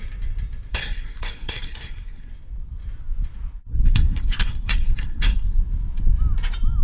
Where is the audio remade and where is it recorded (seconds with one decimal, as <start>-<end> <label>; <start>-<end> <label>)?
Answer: 0.0-0.7 recorded; 0.7-2.3 remade; 2.3-3.7 recorded; 3.7-5.6 remade; 5.6-6.8 recorded